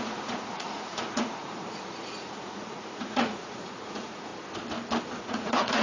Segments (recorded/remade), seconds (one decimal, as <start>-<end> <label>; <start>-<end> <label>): 0.0-4.3 remade; 4.3-5.0 recorded; 5.0-5.8 remade